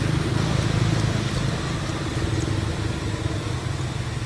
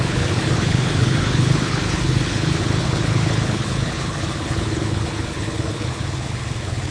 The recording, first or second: first